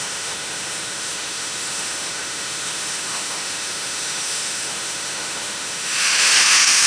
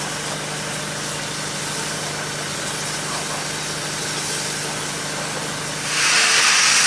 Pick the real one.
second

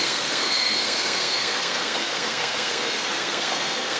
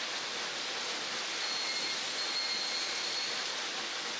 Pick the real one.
second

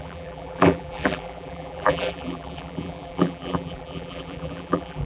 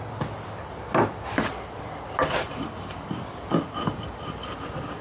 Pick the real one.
second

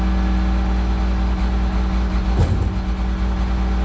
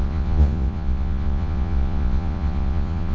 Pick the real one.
first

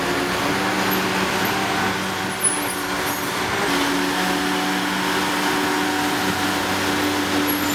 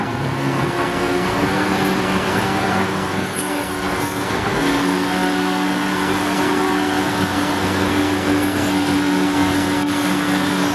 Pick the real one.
first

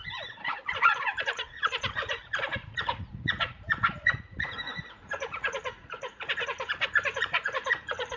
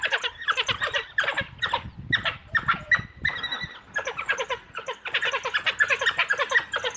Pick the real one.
second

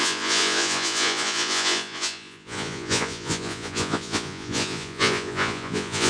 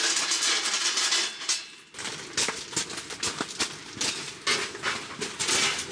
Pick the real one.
second